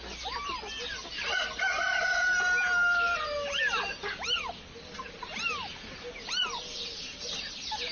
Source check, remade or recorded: recorded